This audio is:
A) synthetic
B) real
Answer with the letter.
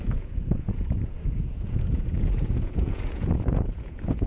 A